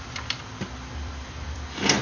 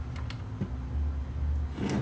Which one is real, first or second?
second